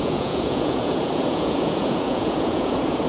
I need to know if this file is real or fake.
fake